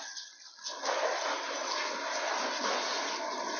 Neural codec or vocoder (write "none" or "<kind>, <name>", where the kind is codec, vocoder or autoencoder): none